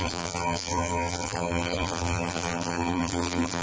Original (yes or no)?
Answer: no